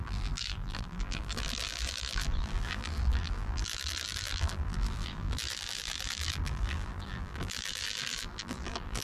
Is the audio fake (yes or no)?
yes